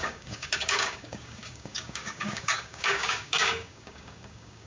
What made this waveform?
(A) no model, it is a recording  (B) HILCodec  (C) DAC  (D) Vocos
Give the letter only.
C